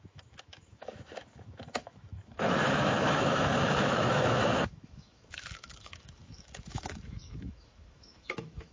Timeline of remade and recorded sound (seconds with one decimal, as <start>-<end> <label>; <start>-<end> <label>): 0.0-8.7 remade